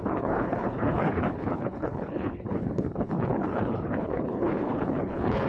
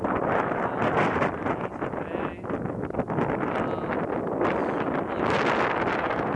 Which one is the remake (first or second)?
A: first